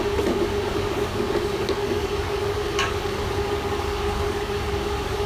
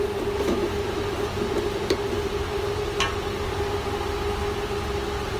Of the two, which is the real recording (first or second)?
second